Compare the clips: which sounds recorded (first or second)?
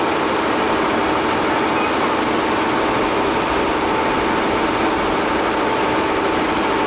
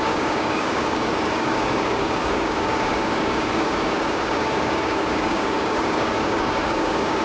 first